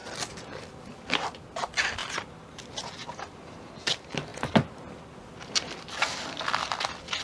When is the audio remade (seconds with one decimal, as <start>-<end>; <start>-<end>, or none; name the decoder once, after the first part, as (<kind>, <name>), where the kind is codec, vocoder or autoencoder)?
0.6-2.0 (vocoder, BigVGAN v2); 3.1-4.3; 6.3-7.2